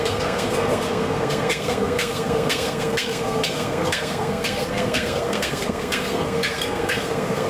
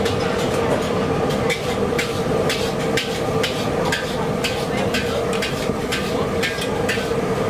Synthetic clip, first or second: first